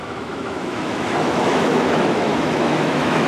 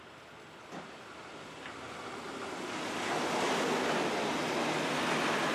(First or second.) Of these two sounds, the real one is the second